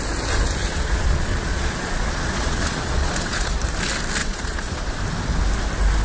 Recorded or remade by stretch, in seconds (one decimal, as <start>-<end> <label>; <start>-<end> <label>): 0.0-0.6 recorded; 0.6-3.5 remade; 3.5-4.2 recorded; 4.2-4.9 remade; 4.9-6.0 recorded